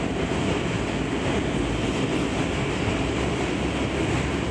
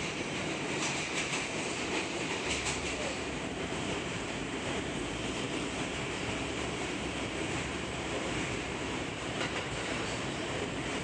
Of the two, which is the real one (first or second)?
first